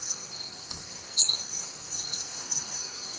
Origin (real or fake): fake